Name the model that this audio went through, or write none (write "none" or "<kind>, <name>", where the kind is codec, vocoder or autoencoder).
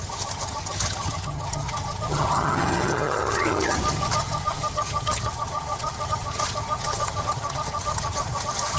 vocoder, HiFi-GAN